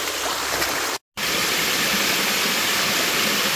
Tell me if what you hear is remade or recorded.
recorded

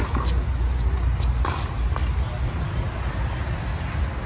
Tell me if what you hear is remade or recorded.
recorded